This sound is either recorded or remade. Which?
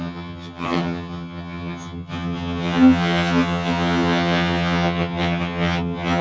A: remade